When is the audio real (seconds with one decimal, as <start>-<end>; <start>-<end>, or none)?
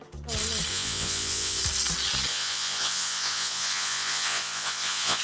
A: 0.0-0.7; 1.6-2.3